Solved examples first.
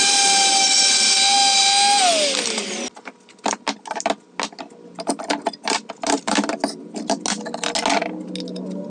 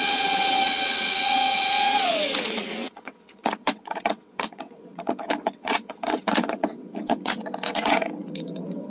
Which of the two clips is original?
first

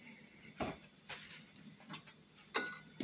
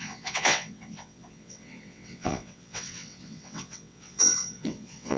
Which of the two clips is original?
first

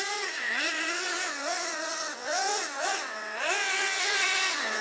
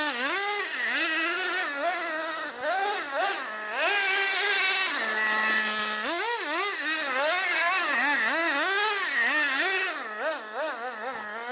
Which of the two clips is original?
second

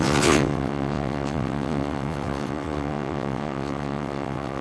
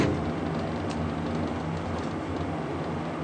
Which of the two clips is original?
second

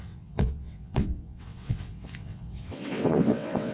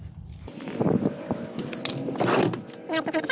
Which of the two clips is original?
second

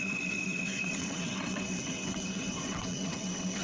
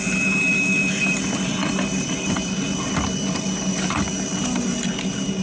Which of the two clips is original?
second